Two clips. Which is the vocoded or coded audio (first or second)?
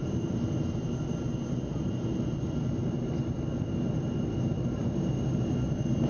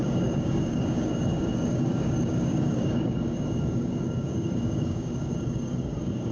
second